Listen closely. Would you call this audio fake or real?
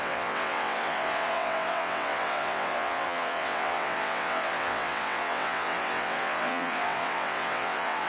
fake